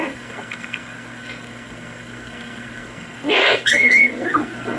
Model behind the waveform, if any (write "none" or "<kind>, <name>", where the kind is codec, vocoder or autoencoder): codec, SNAC